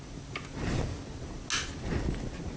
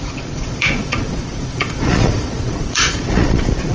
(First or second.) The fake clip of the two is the second